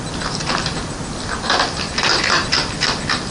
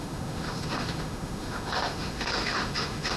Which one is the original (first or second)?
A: first